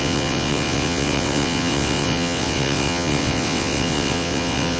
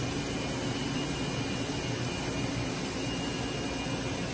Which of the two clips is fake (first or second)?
first